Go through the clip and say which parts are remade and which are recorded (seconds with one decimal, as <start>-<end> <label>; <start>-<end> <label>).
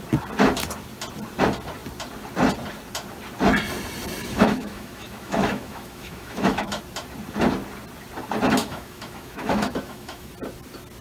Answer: 0.0-4.2 recorded; 4.2-6.8 remade; 6.8-8.6 recorded; 8.6-10.3 remade; 10.3-11.0 recorded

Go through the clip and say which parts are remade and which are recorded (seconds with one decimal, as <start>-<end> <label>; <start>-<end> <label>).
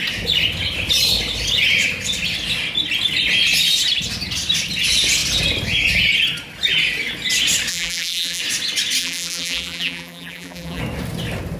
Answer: 0.0-7.7 recorded; 7.7-8.4 remade; 8.4-9.0 recorded; 9.0-10.8 remade; 10.8-11.6 recorded